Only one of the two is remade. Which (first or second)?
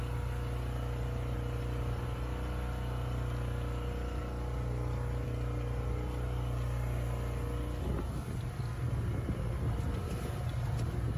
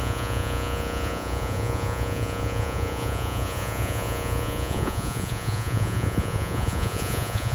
second